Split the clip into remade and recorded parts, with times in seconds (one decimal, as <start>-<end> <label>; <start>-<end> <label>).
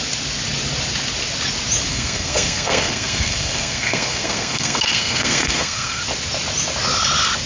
0.0-1.9 recorded; 1.9-6.0 remade; 6.0-7.5 recorded